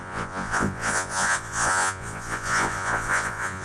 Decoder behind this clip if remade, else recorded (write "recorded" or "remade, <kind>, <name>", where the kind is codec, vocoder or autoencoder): remade, vocoder, Vocos